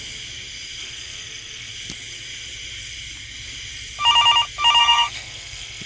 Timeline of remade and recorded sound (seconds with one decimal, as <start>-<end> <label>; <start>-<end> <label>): 0.0-0.8 recorded; 0.8-1.7 remade; 1.7-4.8 recorded; 4.8-5.9 remade